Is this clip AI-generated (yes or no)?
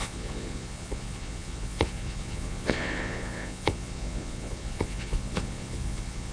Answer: yes